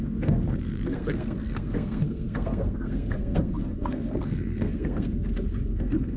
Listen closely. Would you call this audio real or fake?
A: fake